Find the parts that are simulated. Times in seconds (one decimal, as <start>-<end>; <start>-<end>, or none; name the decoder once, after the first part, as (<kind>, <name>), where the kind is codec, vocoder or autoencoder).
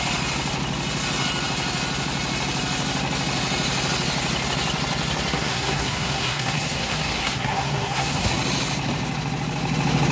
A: 5.3-8.3 (codec, SNAC)